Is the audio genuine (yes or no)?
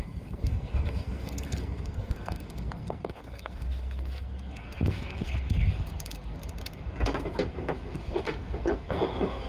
no